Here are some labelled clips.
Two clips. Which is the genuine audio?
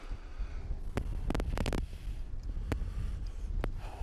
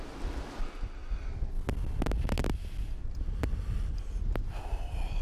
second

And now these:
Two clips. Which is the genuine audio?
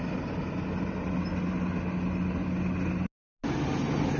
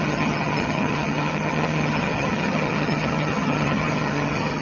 first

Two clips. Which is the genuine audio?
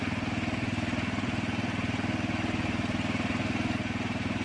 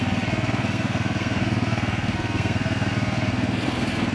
first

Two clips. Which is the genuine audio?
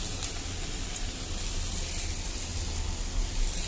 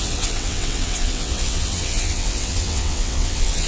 first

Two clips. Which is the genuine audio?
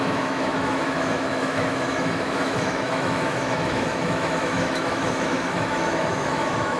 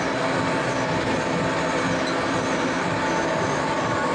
second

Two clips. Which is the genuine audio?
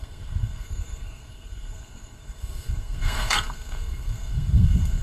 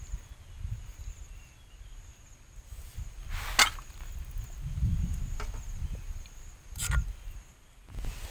second